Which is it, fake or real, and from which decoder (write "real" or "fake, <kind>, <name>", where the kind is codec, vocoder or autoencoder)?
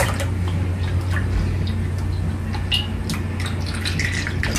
real